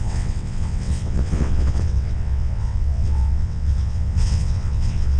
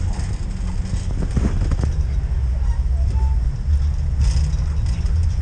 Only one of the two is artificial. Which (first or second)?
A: first